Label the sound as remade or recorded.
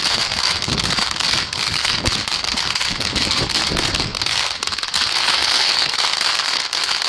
remade